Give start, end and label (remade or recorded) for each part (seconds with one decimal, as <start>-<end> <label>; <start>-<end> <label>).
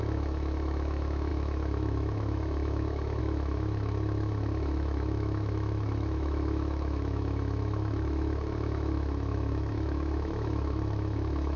0.0-11.6 remade